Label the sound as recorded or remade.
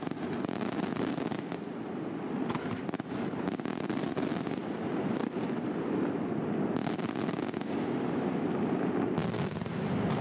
recorded